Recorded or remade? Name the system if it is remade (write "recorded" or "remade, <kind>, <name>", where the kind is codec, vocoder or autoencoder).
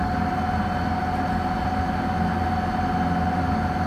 recorded